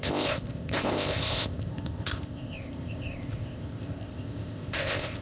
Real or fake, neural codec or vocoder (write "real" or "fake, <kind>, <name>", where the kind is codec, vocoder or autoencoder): fake, codec, ZipCodec